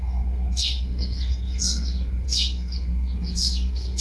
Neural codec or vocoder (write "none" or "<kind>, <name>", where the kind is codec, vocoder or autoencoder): codec, SNAC